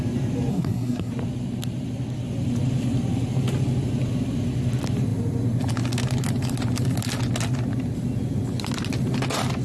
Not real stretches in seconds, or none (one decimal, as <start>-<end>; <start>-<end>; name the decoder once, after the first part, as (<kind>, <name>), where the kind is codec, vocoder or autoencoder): 0.5-1.1 (codec, SNAC)